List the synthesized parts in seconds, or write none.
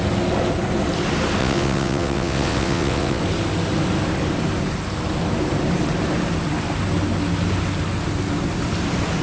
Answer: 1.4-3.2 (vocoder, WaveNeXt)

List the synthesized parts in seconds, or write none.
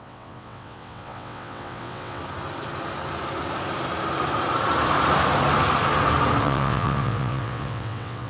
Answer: 0.0-2.2 (vocoder, WaveNeXt); 6.4-8.3